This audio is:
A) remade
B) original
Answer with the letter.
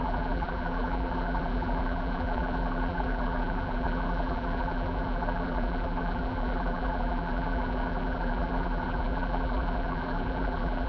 A